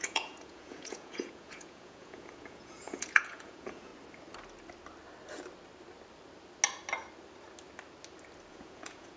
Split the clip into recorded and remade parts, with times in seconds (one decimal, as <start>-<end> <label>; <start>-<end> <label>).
0.0-3.9 remade; 3.9-8.5 recorded; 8.5-9.2 remade